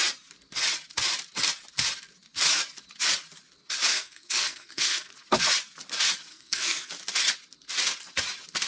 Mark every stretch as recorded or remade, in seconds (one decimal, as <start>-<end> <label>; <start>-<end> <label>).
0.0-3.9 recorded; 3.9-5.1 remade; 5.1-6.3 recorded; 6.3-6.9 remade; 6.9-8.7 recorded